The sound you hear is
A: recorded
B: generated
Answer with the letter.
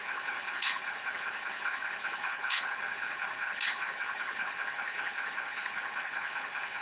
B